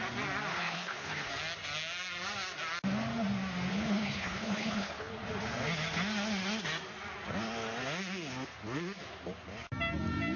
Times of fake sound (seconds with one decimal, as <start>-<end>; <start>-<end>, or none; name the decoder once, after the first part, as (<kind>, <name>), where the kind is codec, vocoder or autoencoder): 0.5-1.3 (codec, HILCodec); 3.7-5.1